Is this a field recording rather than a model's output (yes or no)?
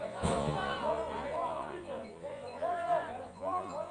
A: no